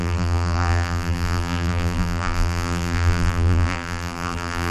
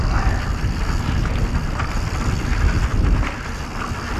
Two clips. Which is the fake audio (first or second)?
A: first